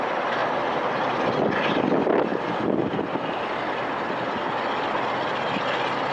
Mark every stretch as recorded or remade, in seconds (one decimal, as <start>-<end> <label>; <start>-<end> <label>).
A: 0.0-6.1 recorded